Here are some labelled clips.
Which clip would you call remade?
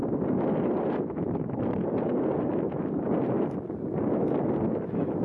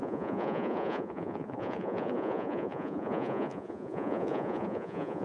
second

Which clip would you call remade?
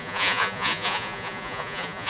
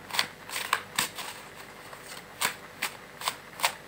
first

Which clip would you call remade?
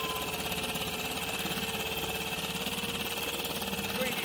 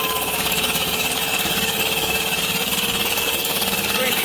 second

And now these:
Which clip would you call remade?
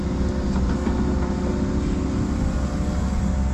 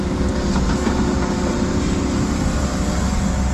second